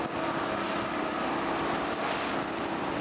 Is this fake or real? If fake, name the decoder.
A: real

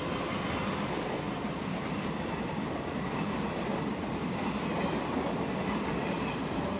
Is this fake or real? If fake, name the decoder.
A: real